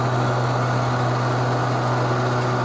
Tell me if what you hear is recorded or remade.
recorded